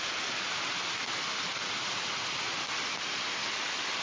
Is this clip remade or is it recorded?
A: recorded